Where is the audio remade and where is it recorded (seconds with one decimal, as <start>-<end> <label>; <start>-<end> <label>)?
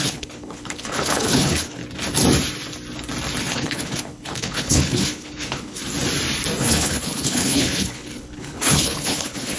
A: 0.0-1.8 remade; 1.8-3.4 recorded; 3.4-5.8 remade; 5.8-6.6 recorded; 6.6-9.6 remade